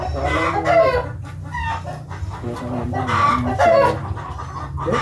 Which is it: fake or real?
real